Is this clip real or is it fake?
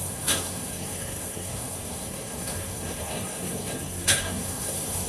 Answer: fake